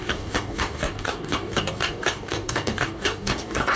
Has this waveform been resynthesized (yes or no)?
yes